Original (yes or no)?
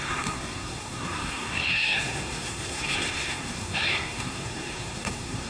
no